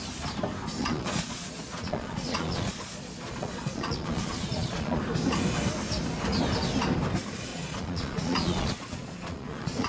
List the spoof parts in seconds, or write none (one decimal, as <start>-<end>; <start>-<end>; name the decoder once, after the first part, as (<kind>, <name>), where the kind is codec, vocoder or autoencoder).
0.8-5.0 (vocoder, Vocos); 7.5-9.9